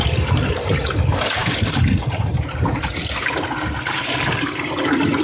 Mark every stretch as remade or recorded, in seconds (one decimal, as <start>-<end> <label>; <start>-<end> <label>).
0.0-5.2 recorded